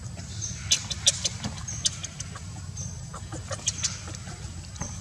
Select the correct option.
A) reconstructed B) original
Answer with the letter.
B